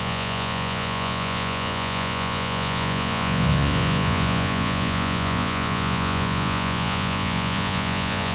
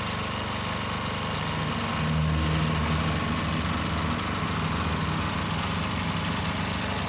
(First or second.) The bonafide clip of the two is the second